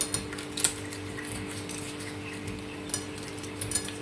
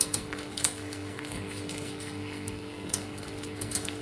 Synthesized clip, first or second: second